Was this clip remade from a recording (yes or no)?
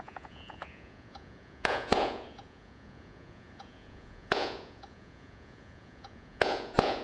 yes